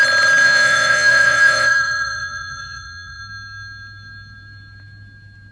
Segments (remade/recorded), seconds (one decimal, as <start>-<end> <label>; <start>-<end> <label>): 0.0-0.4 recorded; 0.4-3.2 remade; 3.2-5.5 recorded